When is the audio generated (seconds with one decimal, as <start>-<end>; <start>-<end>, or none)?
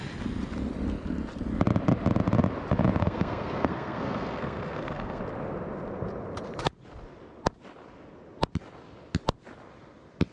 3.0-5.2